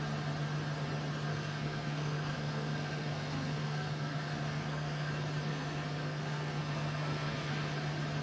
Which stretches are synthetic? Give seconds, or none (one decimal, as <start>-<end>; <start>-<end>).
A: 1.3-5.1; 5.5-7.5